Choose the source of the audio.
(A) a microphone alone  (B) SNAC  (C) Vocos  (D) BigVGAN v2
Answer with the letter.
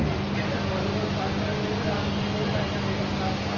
A